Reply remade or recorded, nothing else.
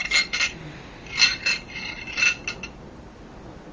recorded